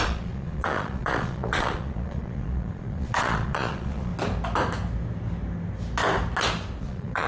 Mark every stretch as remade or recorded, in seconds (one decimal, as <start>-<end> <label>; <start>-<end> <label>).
0.0-4.1 remade; 4.1-6.8 recorded; 6.8-7.3 remade